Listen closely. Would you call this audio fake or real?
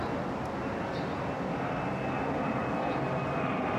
real